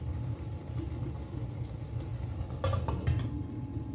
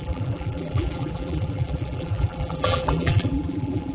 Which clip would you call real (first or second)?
first